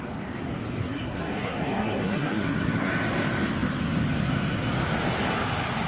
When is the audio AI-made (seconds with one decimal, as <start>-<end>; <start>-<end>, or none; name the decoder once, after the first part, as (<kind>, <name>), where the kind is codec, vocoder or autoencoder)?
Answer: 0.8-2.9 (codec, SNAC)